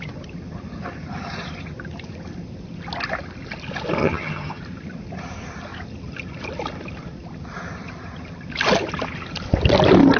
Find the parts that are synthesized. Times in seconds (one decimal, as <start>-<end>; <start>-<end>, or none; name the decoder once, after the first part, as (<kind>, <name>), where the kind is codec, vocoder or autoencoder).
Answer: 4.0-4.6 (vocoder, HiFi-GAN)